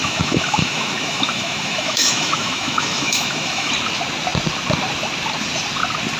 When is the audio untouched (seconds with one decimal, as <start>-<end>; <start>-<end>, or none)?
3.7-6.2